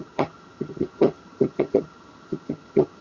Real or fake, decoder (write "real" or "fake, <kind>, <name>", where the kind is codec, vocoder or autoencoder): fake, vocoder, HiFi-GAN